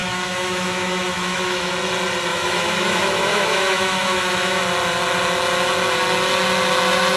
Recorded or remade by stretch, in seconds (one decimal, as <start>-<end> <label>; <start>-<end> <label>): 0.0-1.7 remade; 1.7-2.3 recorded; 2.3-4.6 remade; 4.6-7.2 recorded

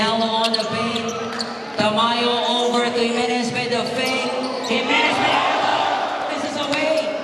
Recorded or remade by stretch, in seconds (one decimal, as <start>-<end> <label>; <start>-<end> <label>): 0.0-2.5 recorded; 2.5-3.5 remade; 3.5-5.7 recorded; 5.7-6.3 remade; 6.3-7.2 recorded

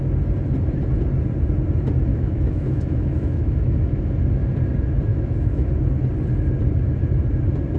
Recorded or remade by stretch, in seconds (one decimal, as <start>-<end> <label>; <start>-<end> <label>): 0.0-2.1 recorded; 2.1-4.0 remade; 4.0-5.1 recorded; 5.1-5.7 remade; 5.7-7.8 recorded

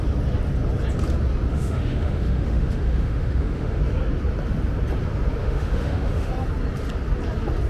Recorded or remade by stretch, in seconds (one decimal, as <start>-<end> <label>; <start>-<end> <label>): 0.0-1.5 recorded; 1.5-3.8 remade; 3.8-5.4 recorded; 5.4-6.3 remade; 6.3-7.7 recorded

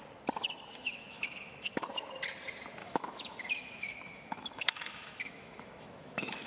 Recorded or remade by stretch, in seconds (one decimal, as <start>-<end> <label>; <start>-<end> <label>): 0.0-0.9 recorded; 0.9-1.7 remade; 1.7-2.8 recorded; 2.8-6.5 remade